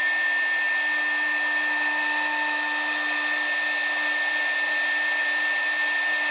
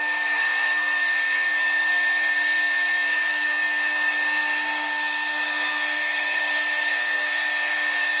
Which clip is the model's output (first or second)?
second